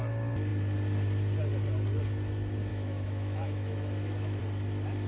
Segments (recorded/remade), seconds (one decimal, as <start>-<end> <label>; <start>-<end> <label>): 0.0-2.7 recorded; 2.7-4.4 remade; 4.4-5.1 recorded